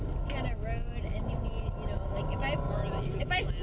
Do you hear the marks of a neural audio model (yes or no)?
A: no